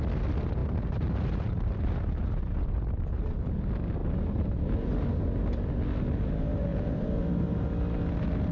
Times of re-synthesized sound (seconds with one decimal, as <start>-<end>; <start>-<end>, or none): 0.6-2.1; 4.0-4.9; 6.7-7.3